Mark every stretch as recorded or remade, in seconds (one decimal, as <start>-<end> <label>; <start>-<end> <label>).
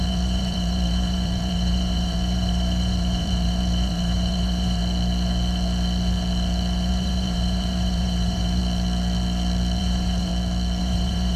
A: 0.0-4.8 remade; 4.8-6.9 recorded; 6.9-8.6 remade; 8.6-9.8 recorded; 9.8-10.3 remade; 10.3-10.8 recorded; 10.8-11.4 remade